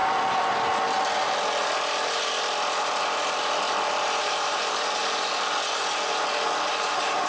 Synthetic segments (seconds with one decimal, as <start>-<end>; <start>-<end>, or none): 4.2-5.0; 6.7-7.3

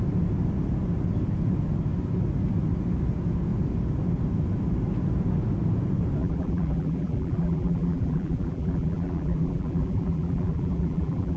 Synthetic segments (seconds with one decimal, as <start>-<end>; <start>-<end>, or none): 6.2-11.4

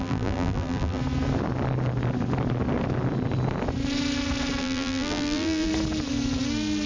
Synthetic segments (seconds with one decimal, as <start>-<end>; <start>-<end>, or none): 0.0-1.0; 4.6-5.7

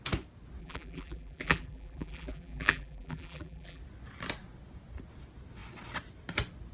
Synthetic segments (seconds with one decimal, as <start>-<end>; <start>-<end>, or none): 0.6-3.8

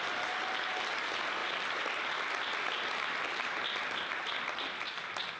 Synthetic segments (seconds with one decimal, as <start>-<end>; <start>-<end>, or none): 1.4-4.6